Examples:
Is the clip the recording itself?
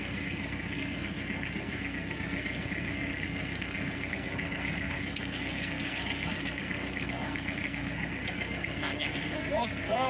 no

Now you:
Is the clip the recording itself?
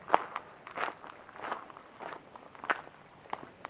yes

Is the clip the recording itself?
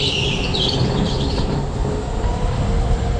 yes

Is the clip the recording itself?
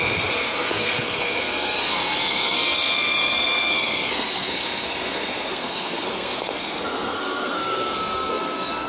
no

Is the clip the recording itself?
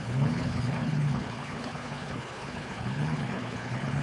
no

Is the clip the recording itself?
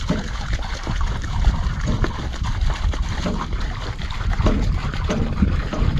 no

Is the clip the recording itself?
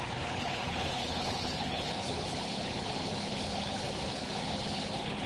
no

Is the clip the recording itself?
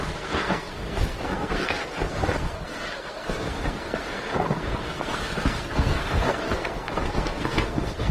no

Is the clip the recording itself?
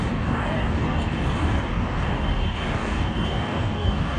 no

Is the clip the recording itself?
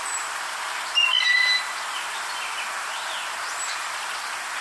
yes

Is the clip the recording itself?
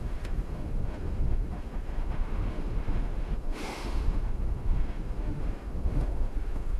no